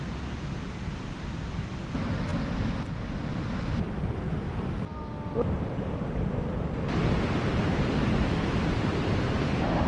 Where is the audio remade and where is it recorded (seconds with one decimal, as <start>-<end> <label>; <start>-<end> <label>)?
0.0-9.9 recorded